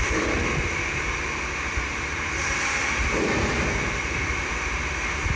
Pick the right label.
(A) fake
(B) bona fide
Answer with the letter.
A